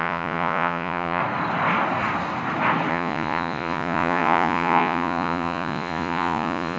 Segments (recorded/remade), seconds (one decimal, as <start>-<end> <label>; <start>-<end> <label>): 0.0-1.2 remade; 1.2-2.9 recorded; 2.9-6.8 remade